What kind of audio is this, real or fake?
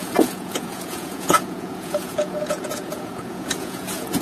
fake